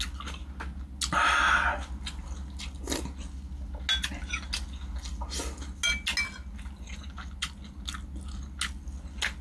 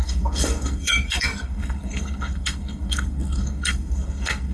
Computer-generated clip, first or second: second